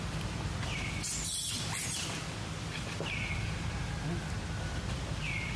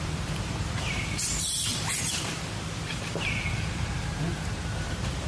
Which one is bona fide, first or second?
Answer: first